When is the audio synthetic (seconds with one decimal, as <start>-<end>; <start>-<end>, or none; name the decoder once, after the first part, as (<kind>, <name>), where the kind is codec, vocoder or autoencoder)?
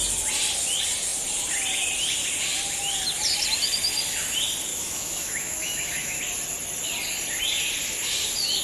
4.7-6.2 (autoencoder, DAC-VAE)